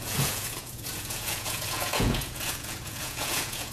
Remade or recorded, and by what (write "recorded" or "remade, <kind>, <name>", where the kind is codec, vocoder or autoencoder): remade, vocoder, Vocos